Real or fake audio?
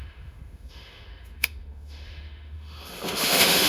fake